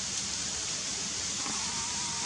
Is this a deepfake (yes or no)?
no